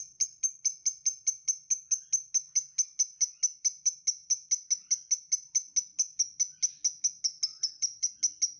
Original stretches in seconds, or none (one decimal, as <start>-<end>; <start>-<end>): 0.0-7.5; 8.1-8.6